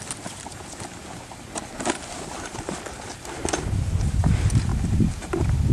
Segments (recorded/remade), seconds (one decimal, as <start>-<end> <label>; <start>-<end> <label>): 0.0-5.7 recorded